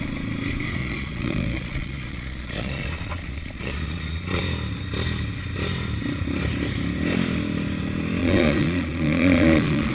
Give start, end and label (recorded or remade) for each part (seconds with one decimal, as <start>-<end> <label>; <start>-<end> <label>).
0.0-0.8 recorded; 0.8-4.4 remade; 4.4-8.2 recorded; 8.2-9.9 remade